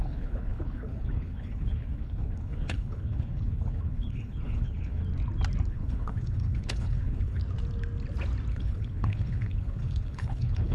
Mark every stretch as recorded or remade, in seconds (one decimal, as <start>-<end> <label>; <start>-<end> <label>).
0.0-5.0 remade; 5.0-5.7 recorded; 5.7-7.4 remade; 7.4-8.5 recorded; 8.5-10.7 remade

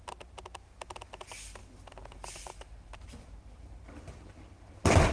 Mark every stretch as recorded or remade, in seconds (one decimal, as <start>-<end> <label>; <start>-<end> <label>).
0.0-5.1 recorded

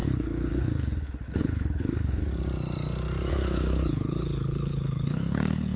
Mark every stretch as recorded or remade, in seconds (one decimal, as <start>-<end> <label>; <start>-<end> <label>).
0.0-2.2 remade; 2.2-3.3 recorded; 3.3-5.8 remade

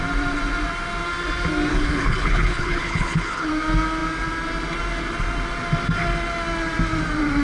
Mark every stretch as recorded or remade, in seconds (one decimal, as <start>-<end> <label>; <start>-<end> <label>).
0.0-1.7 recorded; 1.7-3.5 remade; 3.5-7.4 recorded

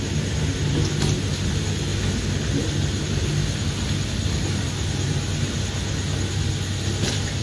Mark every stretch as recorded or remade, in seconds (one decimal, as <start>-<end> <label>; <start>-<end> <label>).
0.0-7.4 recorded